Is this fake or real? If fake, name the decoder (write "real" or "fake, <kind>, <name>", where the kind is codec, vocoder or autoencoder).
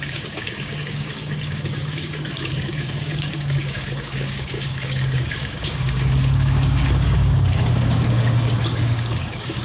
fake, codec, DAC